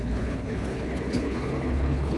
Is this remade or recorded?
remade